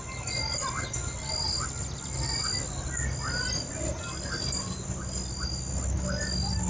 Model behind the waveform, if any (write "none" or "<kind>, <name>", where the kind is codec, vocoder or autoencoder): none